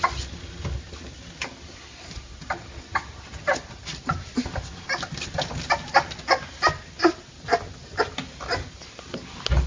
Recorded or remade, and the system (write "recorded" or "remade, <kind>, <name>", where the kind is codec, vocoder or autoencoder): recorded